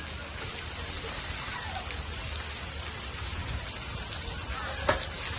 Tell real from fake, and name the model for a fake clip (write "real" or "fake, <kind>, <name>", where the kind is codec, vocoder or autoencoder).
real